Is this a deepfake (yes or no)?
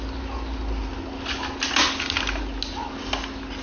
no